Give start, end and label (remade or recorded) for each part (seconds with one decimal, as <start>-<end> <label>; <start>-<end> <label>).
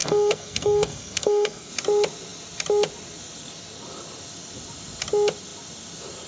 0.0-1.7 remade; 1.7-6.3 recorded